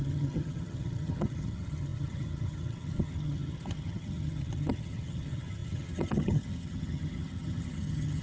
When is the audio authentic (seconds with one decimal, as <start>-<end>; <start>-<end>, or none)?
none